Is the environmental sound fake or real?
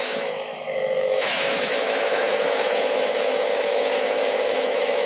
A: fake